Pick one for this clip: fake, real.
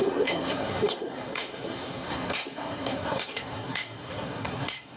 fake